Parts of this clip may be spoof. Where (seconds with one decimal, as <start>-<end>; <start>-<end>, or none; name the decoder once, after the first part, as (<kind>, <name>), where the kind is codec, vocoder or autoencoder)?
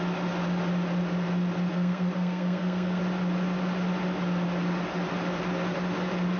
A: 1.7-3.0 (codec, SNAC)